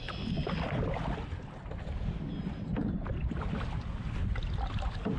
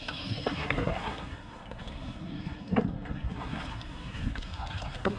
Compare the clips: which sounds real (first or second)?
first